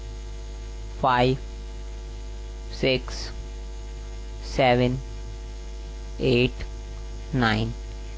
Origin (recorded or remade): recorded